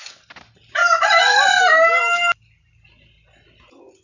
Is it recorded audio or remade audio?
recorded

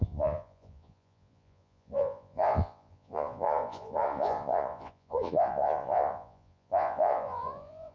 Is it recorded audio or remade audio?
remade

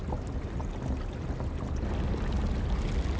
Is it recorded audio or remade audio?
recorded